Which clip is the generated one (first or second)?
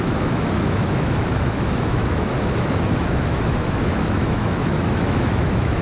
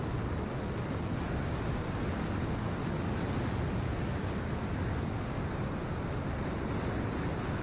first